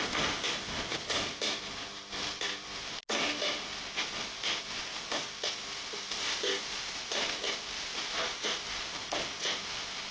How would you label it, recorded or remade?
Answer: recorded